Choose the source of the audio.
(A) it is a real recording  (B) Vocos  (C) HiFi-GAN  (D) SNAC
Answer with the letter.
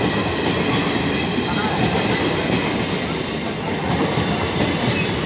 A